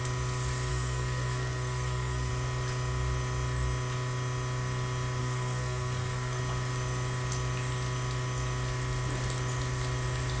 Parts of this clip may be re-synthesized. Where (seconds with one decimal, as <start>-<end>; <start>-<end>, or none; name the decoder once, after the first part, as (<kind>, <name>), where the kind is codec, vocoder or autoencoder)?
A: 0.7-2.3 (codec, SNAC); 5.2-6.4